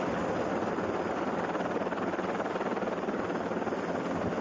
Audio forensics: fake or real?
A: real